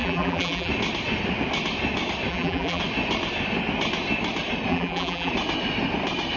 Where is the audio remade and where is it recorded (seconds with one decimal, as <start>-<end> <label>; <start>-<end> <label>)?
0.0-0.7 remade; 0.7-2.3 recorded; 2.3-2.8 remade; 2.8-4.7 recorded; 4.7-5.3 remade; 5.3-6.4 recorded